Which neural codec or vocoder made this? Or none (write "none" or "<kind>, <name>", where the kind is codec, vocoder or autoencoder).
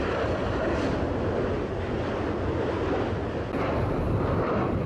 none